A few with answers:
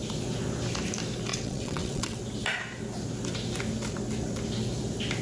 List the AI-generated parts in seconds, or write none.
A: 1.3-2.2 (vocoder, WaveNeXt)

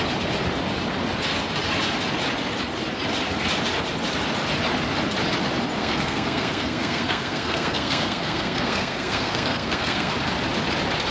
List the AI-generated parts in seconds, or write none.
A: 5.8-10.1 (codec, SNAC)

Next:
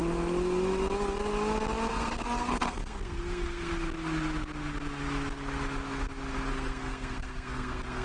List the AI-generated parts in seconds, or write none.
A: 1.9-3.7 (codec, SNAC); 6.5-8.0

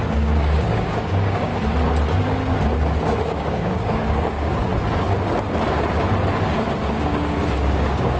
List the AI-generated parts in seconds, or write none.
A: 0.0-1.5 (codec, DAC); 3.0-4.7; 6.9-8.2

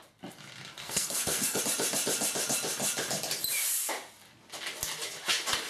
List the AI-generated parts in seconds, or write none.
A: 0.8-1.6 (codec, SNAC)

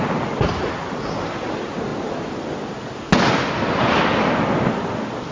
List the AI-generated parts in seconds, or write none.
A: none